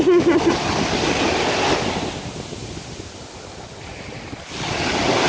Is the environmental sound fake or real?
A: real